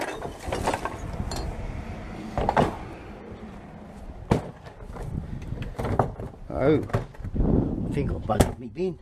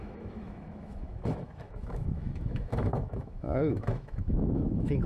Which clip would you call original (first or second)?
first